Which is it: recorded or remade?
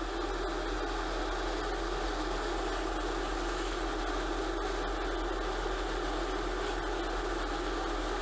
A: recorded